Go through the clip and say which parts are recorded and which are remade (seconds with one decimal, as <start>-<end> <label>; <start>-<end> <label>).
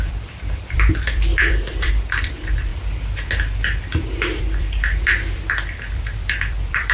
0.0-2.7 remade; 2.7-4.4 recorded; 4.4-6.9 remade